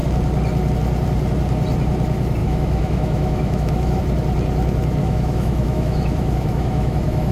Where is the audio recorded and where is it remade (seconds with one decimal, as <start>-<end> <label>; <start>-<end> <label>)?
0.0-2.4 recorded; 2.4-4.0 remade; 4.0-5.0 recorded; 5.0-7.3 remade